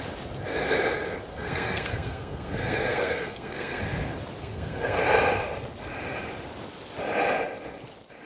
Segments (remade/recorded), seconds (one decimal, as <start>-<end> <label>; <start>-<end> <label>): 0.0-1.3 recorded; 1.3-3.8 remade; 3.8-4.4 recorded; 4.4-5.0 remade; 5.0-8.3 recorded